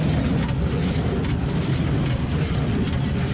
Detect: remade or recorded recorded